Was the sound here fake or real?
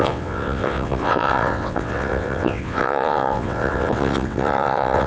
fake